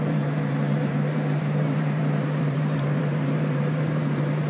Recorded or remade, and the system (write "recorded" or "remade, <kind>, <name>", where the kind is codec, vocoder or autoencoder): remade, vocoder, BigVGAN v2